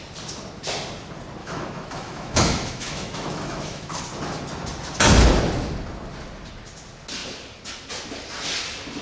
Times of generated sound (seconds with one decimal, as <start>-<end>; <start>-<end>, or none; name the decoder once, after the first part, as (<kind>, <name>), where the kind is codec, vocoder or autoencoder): 1.4-4.0 (autoencoder, DAC-VAE)